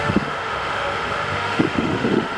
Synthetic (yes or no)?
yes